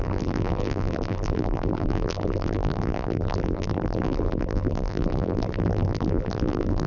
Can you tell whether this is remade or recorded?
remade